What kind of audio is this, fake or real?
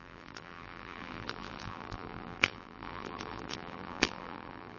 fake